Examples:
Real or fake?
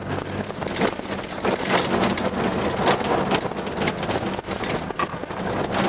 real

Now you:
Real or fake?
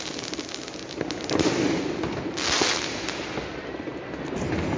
real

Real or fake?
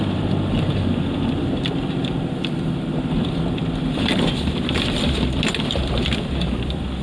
fake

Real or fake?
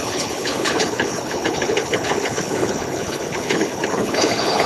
fake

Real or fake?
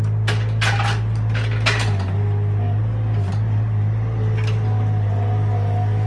real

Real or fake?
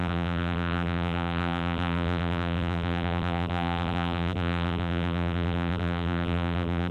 fake